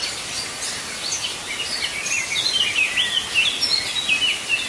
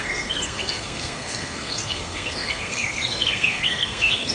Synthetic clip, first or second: second